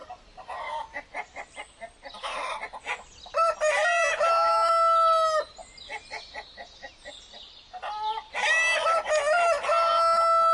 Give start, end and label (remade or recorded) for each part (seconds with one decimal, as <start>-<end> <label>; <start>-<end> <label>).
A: 0.0-2.8 remade; 2.8-10.5 recorded